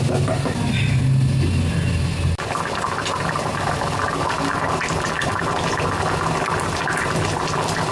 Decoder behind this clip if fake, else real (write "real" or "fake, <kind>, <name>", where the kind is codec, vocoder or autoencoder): real